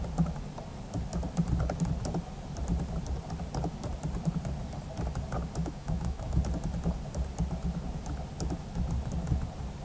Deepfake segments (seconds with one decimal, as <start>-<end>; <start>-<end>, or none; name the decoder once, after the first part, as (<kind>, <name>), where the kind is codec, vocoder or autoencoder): 5.6-6.4 (autoencoder, DAC-VAE)

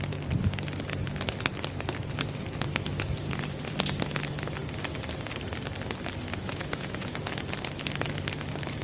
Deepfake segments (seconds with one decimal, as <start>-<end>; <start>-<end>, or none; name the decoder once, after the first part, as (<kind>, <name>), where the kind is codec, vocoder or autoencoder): 6.3-7.2 (vocoder, Vocos)

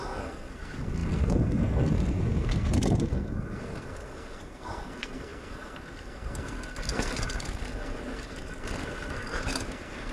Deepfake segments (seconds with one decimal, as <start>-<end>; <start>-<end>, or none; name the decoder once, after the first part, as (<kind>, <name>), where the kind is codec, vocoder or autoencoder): 0.0-10.1 (codec, SNAC)

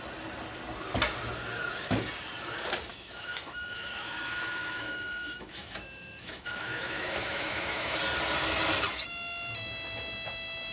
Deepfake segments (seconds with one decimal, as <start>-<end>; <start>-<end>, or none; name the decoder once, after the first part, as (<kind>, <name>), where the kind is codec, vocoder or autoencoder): 2.9-8.0 (autoencoder, DAC-VAE)

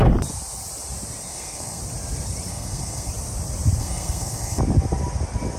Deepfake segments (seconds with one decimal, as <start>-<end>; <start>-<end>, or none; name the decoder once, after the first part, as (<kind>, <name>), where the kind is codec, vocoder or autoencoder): 1.3-1.8 (codec, SNAC); 2.5-3.1; 3.8-4.6

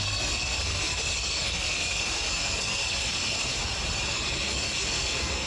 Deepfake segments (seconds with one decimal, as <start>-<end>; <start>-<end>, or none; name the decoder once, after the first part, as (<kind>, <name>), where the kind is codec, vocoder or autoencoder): 0.0-3.5 (codec, SNAC); 4.1-5.5

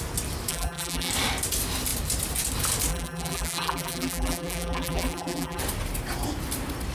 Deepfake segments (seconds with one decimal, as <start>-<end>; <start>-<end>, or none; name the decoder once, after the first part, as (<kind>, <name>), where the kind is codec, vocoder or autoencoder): 0.5-1.1 (vocoder, BigVGAN v2); 2.9-5.6

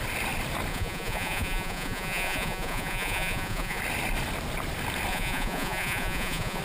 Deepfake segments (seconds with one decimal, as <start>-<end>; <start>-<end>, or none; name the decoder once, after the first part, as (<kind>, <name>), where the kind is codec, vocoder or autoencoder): 0.7-3.8 (vocoder, Vocos); 5.1-6.6